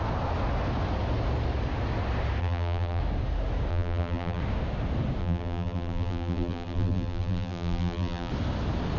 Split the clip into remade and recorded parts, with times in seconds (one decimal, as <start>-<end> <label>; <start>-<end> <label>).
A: 0.0-2.4 recorded; 2.4-3.0 remade; 3.0-3.7 recorded; 3.7-4.4 remade; 4.4-5.2 recorded; 5.2-8.3 remade; 8.3-9.0 recorded